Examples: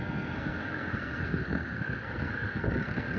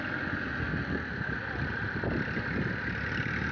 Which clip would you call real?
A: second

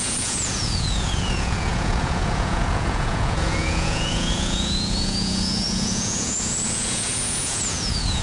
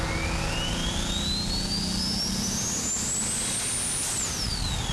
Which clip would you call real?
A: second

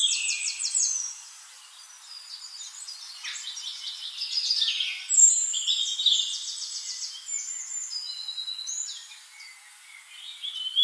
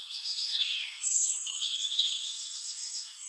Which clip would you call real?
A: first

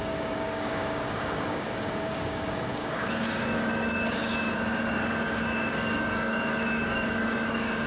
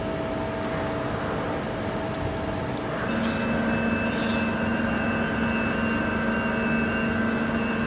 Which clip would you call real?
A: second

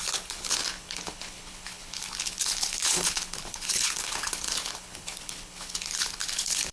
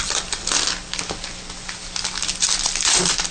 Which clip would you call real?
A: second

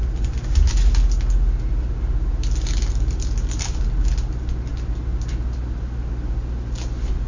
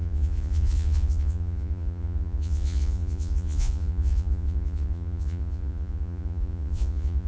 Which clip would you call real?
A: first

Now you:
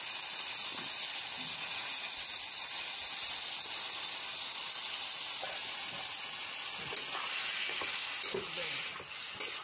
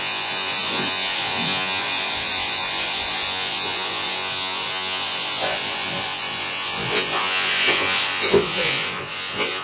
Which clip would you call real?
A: first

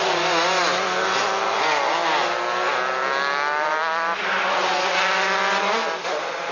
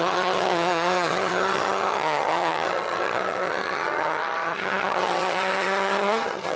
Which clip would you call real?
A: first